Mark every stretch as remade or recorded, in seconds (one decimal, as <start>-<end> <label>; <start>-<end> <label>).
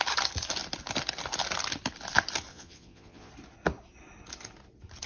0.0-2.5 recorded; 2.5-3.3 remade; 3.3-5.1 recorded